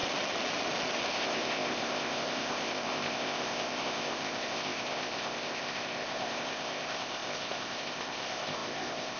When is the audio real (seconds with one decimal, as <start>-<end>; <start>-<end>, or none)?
0.0-1.1